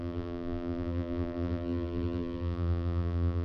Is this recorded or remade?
remade